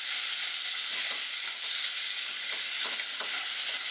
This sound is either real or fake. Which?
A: real